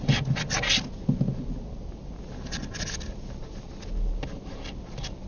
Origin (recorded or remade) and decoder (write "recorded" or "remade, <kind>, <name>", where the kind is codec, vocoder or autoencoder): recorded